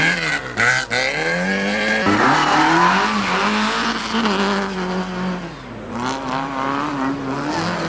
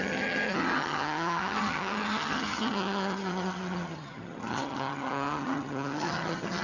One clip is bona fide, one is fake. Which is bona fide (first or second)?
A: first